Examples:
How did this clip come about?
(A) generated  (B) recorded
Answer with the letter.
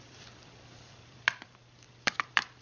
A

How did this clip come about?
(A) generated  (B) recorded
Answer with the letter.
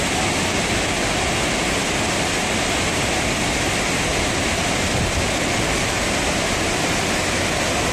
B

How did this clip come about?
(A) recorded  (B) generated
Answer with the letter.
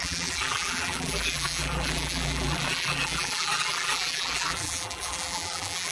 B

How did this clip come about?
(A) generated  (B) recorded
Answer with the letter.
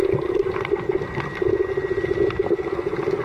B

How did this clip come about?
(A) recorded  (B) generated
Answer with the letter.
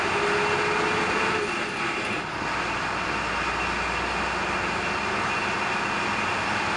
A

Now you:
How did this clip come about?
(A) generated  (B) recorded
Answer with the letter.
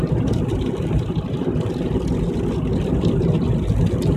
B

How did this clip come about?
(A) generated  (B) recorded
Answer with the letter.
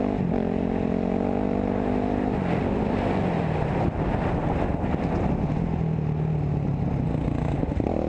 B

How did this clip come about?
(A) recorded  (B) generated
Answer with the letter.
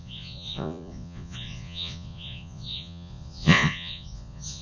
B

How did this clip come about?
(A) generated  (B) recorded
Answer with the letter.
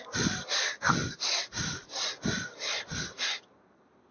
B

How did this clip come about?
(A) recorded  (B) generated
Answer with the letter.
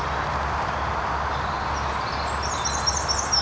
A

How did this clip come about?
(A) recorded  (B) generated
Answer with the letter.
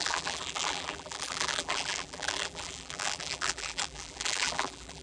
B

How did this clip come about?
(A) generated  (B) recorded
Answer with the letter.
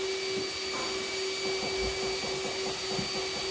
B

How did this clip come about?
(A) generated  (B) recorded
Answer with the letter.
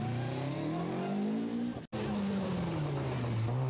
B